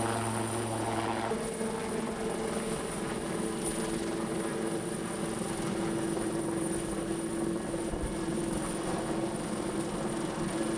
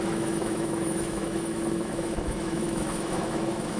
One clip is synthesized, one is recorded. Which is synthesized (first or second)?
second